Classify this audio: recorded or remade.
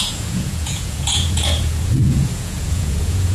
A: remade